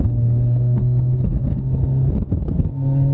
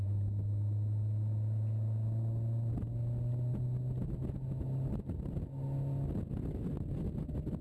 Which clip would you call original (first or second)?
second